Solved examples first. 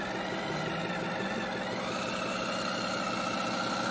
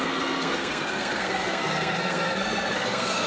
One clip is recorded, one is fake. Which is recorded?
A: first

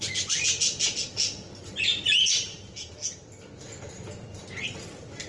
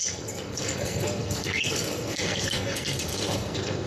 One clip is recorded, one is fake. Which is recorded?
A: first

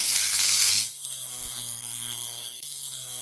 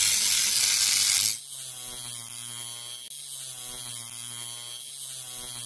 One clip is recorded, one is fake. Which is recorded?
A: second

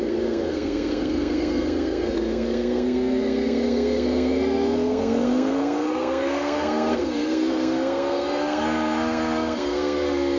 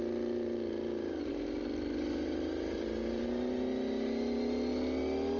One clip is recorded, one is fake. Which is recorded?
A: second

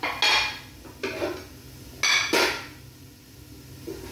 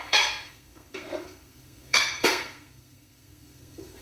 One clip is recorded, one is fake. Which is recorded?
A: first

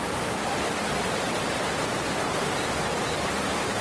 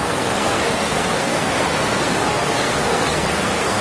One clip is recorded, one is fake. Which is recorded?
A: first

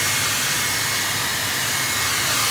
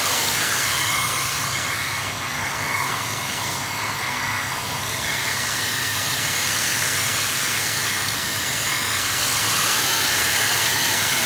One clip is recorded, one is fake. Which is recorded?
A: first